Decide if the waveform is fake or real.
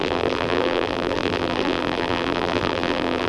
fake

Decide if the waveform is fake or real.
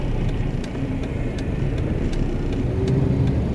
fake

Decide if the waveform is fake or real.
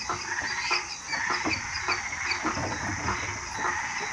real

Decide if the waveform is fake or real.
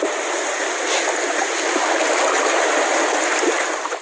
real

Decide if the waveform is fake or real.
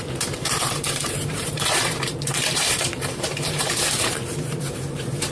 fake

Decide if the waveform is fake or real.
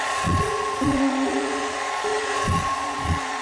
fake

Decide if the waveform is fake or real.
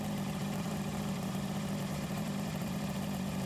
fake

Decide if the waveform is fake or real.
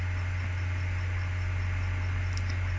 real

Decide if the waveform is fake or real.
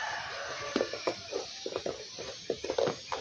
real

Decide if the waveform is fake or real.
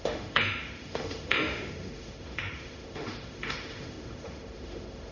fake